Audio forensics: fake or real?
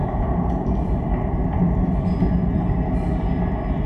fake